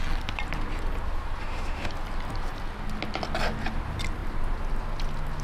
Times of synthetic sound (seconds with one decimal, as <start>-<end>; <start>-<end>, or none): 1.4-1.9